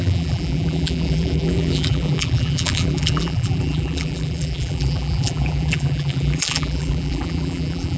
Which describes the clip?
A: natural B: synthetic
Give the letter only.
B